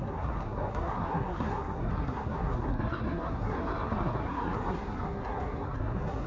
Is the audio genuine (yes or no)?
no